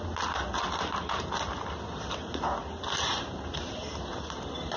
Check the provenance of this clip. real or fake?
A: real